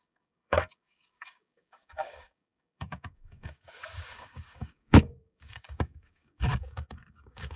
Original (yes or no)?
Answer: no